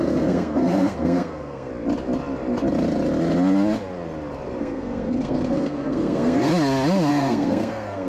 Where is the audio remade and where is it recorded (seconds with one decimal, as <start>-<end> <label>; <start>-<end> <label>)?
0.0-1.7 remade; 1.7-4.6 recorded; 4.6-6.5 remade; 6.5-7.1 recorded; 7.1-8.1 remade

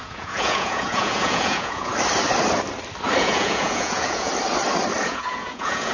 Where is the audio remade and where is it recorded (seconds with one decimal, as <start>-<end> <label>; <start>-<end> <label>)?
0.0-1.9 remade; 1.9-3.2 recorded; 3.2-4.3 remade; 4.3-5.0 recorded; 5.0-5.9 remade

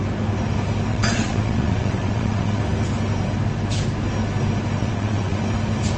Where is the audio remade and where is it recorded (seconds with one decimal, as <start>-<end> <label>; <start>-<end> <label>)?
0.0-0.9 recorded; 0.9-2.6 remade; 2.6-4.8 recorded; 4.8-5.4 remade; 5.4-6.0 recorded

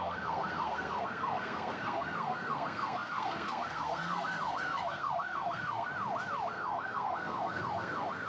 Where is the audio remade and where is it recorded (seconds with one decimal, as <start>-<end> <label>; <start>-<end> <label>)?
0.0-5.9 remade; 5.9-6.5 recorded; 6.5-8.3 remade

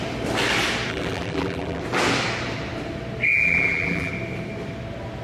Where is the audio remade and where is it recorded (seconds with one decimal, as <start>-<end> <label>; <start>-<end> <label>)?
0.0-0.9 recorded; 0.9-1.8 remade; 1.8-3.3 recorded; 3.3-4.1 remade; 4.1-5.2 recorded

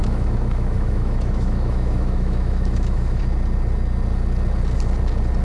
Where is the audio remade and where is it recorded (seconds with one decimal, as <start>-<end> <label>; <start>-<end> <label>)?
0.0-3.2 remade; 3.2-5.4 recorded

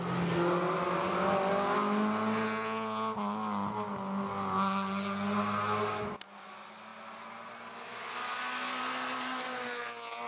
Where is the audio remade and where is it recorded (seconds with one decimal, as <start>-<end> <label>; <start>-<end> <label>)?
0.0-10.3 recorded

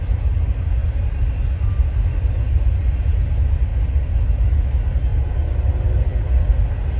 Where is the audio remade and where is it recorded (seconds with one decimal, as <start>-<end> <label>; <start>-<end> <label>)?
0.0-3.7 recorded; 3.7-4.2 remade; 4.2-5.1 recorded; 5.1-6.6 remade; 6.6-7.0 recorded